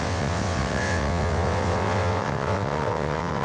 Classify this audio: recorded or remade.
remade